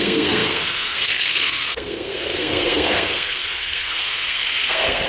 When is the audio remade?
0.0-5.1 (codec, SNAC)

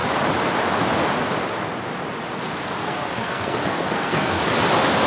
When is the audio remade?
2.8-4.4 (codec, SNAC)